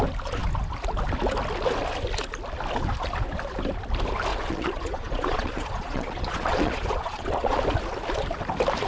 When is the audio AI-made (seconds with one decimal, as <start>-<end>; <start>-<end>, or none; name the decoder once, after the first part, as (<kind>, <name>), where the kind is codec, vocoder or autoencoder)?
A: 4.3-7.6 (vocoder, Vocos)